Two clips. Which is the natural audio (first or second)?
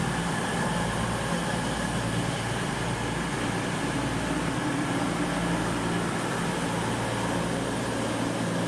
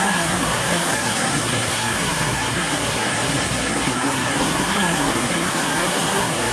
first